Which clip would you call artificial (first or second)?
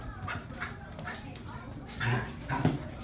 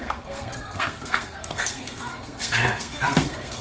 second